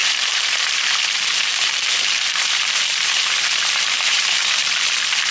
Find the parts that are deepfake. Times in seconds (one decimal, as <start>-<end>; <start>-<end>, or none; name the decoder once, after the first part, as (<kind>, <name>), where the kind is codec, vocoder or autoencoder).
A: 0.0-1.0 (vocoder, BigVGAN v2); 1.5-4.7